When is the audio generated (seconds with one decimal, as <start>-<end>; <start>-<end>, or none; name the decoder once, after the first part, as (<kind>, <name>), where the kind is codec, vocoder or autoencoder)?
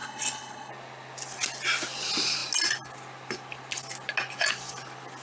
0.0-0.7 (codec, HILCodec)